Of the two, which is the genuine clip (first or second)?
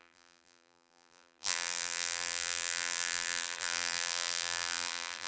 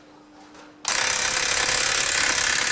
second